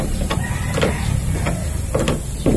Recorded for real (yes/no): yes